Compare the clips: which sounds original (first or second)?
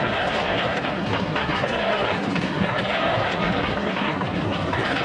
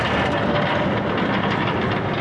second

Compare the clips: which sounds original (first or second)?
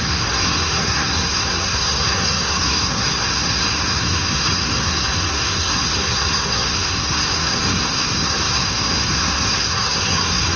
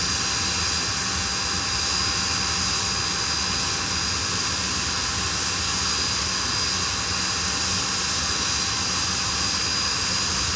second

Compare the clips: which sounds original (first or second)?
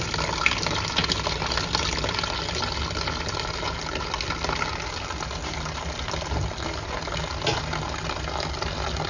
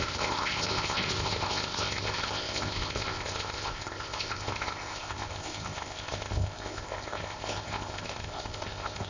first